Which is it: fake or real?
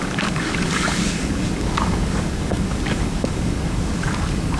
fake